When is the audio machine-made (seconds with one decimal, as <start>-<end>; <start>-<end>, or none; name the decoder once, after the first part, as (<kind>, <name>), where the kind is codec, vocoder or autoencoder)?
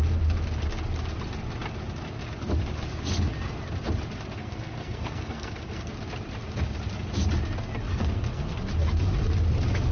4.4-5.9 (codec, SNAC); 7.9-8.6